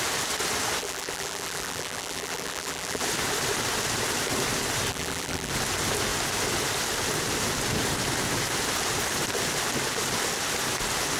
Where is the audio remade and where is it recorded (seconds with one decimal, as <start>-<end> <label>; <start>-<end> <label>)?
0.0-0.8 recorded; 0.8-3.0 remade; 3.0-4.9 recorded; 4.9-5.5 remade; 5.5-11.2 recorded